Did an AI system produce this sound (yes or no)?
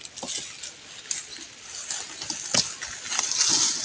no